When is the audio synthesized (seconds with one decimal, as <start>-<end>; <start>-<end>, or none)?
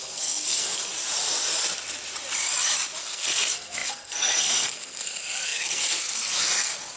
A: 0.0-0.9; 3.0-7.0